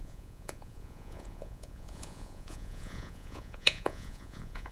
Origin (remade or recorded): remade